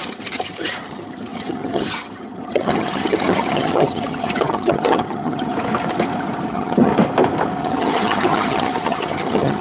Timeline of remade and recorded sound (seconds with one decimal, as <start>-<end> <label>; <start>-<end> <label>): 0.0-5.5 remade; 5.5-6.5 recorded; 6.5-6.9 remade; 6.9-7.6 recorded; 7.6-9.6 remade